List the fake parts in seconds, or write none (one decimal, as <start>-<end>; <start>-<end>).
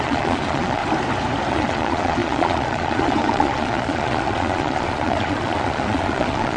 0.0-0.8; 1.5-6.6